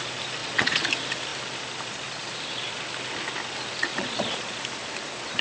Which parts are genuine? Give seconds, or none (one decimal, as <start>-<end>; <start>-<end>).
0.0-0.4; 0.9-3.8; 4.6-5.4